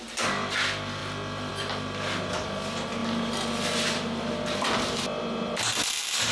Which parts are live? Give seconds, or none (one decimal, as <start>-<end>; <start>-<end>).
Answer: 0.0-6.3